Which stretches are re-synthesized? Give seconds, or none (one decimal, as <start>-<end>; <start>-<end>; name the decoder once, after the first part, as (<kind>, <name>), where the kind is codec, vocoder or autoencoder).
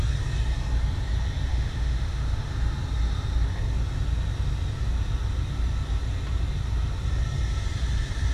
1.5-2.5 (autoencoder, DAC-VAE)